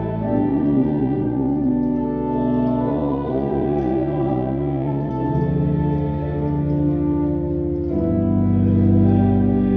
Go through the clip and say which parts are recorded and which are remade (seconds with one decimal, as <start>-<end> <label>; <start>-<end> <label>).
0.0-0.5 recorded; 0.5-1.7 remade; 1.7-2.9 recorded; 2.9-5.1 remade; 5.1-9.8 recorded